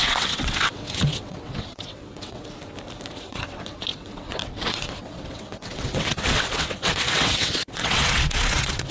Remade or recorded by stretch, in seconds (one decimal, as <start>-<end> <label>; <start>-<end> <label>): 0.0-2.4 remade; 2.4-3.1 recorded; 3.1-8.9 remade